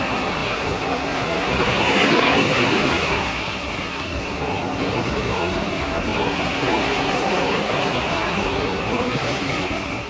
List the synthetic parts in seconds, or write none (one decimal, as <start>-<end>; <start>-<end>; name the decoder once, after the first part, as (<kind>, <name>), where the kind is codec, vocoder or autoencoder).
0.0-10.1 (codec, SNAC)

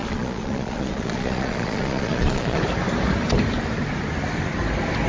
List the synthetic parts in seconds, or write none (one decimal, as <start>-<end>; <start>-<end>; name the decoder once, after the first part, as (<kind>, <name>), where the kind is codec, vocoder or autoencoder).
0.0-2.6 (vocoder, Vocos)

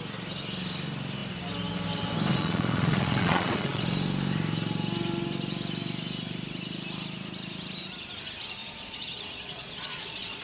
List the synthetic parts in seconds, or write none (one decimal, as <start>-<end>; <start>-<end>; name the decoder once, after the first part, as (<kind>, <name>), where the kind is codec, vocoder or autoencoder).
2.3-3.8 (vocoder, Vocos); 8.6-10.4

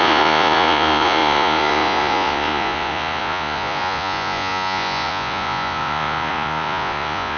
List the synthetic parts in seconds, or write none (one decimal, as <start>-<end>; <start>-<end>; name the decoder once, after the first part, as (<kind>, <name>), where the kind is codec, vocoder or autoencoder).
0.0-7.4 (vocoder, Vocos)

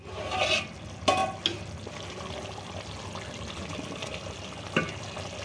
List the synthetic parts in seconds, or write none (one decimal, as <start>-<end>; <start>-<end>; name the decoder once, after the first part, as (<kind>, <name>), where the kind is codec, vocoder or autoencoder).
none